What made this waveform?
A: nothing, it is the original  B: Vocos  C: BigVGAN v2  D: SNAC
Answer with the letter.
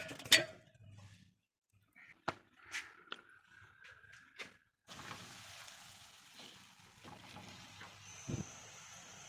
A